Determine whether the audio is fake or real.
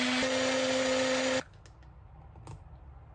real